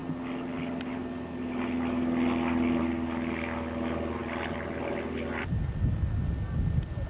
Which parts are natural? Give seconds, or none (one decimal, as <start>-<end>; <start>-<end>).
0.0-7.1